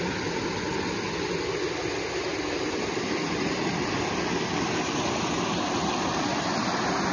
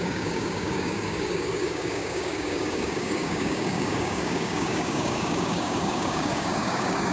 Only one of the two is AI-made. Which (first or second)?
second